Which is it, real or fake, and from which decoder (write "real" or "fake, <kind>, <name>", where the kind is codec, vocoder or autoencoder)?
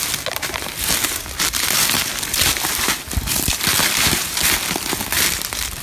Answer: real